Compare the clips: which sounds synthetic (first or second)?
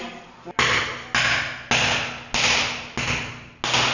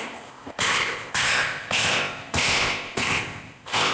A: second